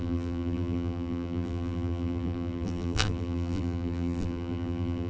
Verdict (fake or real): fake